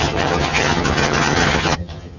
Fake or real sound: fake